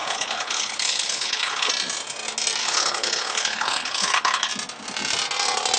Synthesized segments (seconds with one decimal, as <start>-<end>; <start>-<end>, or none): 0.0-1.7; 2.6-4.5